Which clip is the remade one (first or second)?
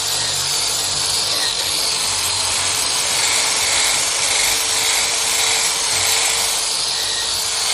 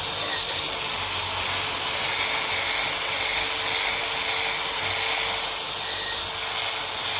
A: first